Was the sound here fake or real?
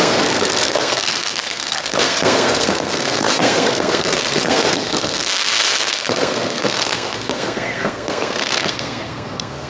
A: fake